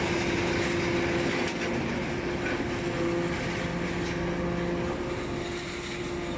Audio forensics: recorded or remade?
recorded